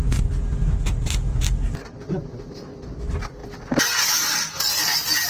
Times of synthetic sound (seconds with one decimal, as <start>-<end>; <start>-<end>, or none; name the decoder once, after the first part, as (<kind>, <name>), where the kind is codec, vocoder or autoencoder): 1.3-2.2 (vocoder, BigVGAN v2)